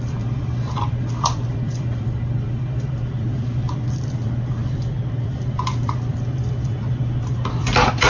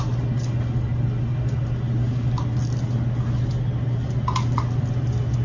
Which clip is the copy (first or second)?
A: first